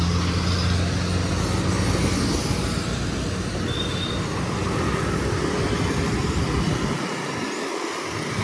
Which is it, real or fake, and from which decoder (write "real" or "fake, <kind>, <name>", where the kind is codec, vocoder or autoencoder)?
real